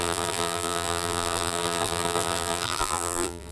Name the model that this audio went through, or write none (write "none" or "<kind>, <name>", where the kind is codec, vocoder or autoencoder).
vocoder, BigVGAN v2